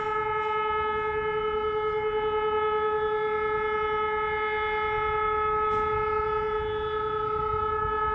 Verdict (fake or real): real